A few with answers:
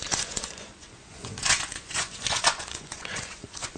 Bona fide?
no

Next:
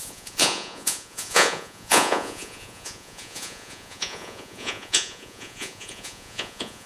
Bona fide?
no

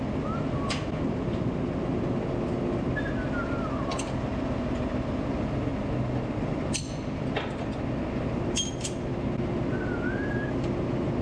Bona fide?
yes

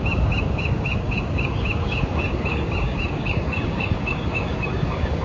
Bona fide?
no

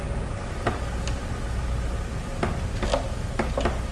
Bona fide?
yes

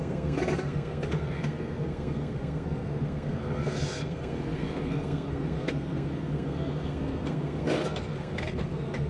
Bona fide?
no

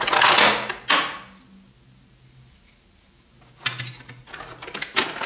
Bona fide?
yes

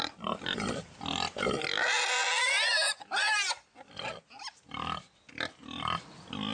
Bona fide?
yes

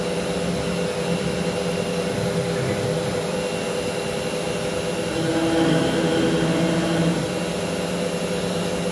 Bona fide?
yes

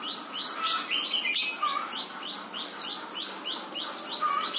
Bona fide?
yes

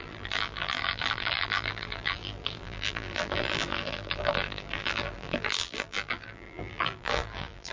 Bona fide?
no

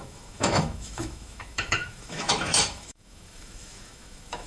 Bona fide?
no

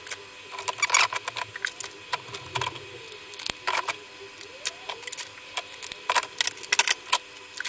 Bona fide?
yes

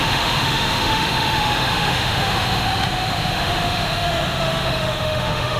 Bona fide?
no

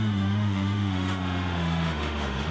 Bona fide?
no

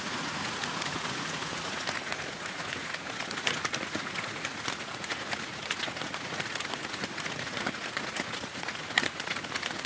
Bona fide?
no